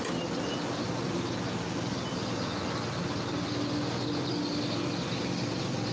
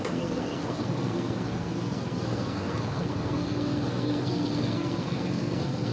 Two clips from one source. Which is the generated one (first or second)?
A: second